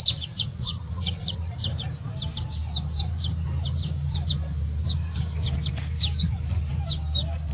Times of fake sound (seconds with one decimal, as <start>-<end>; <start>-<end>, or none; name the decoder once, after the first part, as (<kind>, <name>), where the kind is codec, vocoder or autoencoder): 0.5-1.5 (vocoder, Vocos)